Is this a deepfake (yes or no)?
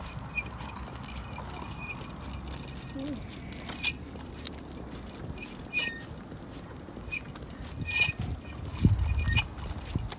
no